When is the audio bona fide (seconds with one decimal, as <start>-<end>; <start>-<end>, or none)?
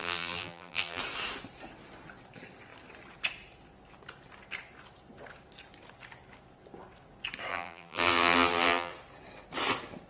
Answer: 1.0-7.5; 8.9-10.1